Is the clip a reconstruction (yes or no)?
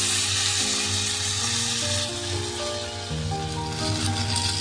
no